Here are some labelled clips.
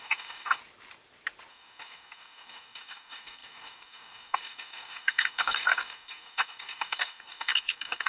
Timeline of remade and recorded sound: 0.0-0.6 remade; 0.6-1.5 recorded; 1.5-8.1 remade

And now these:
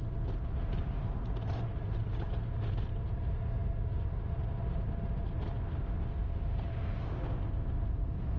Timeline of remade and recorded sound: 0.0-8.4 recorded

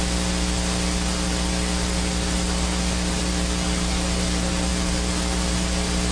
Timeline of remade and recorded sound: 0.0-6.1 recorded

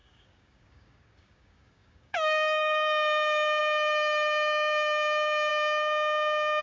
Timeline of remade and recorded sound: 0.0-6.6 remade

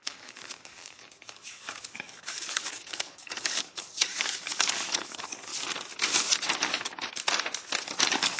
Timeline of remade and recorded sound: 0.0-5.5 remade; 5.5-8.0 recorded; 8.0-8.4 remade

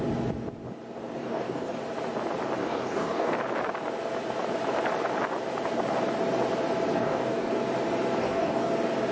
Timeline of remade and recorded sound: 0.0-1.2 recorded; 1.2-1.8 remade; 1.8-2.6 recorded; 2.6-3.3 remade; 3.3-6.9 recorded; 6.9-7.5 remade; 7.5-8.2 recorded; 8.2-8.7 remade; 8.7-9.1 recorded

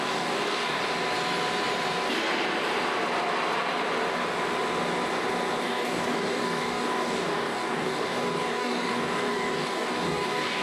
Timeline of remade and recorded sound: 0.0-0.8 remade; 0.8-5.6 recorded; 5.6-10.6 remade